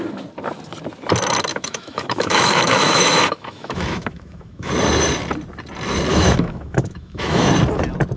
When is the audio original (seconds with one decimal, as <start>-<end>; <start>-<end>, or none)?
0.0-1.5; 4.7-6.1; 7.5-8.2